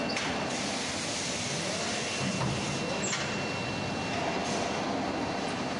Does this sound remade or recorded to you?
recorded